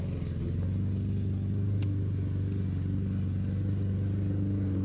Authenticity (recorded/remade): recorded